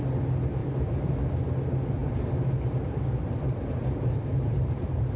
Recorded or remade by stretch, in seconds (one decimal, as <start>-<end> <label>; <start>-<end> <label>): 0.0-0.6 recorded; 0.6-1.1 remade; 1.1-2.0 recorded; 2.0-5.2 remade